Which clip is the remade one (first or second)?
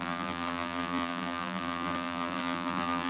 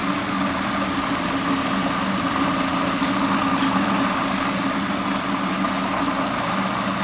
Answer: first